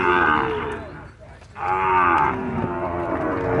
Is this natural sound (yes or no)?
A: yes